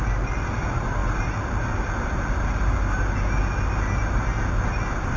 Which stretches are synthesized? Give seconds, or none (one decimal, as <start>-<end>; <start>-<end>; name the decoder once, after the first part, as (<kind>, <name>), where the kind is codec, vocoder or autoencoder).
none